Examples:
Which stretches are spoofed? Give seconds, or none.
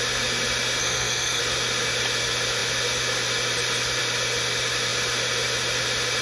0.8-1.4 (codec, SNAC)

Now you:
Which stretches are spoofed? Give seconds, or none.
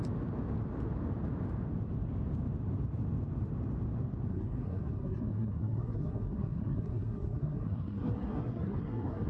4.3-9.3 (codec, SNAC)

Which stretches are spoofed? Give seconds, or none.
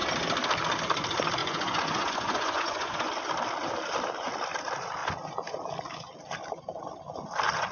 1.4-3.1 (vocoder, Vocos)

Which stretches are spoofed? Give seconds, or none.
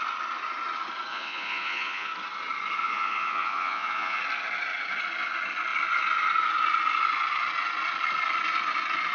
1.1-2.1 (vocoder, Vocos); 2.8-4.2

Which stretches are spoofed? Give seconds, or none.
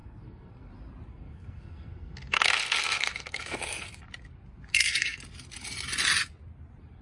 0.0-0.7 (codec, SNAC); 1.1-4.0; 4.7-5.2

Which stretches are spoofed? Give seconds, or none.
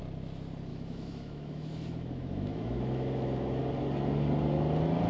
0.7-3.6 (autoencoder, DAC-VAE)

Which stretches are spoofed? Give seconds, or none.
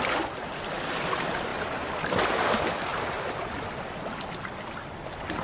2.9-3.5 (vocoder, BigVGAN v2)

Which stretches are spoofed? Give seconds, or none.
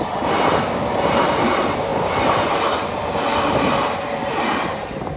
none